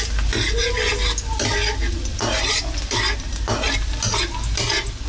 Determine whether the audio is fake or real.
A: real